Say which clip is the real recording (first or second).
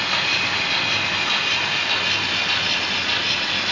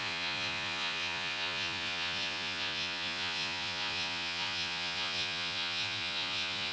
first